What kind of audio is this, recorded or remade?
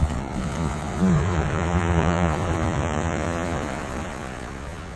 remade